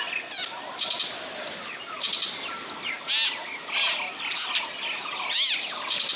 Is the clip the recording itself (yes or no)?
yes